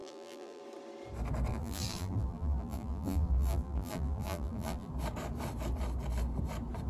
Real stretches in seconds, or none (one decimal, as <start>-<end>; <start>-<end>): 0.6-1.5; 4.9-6.9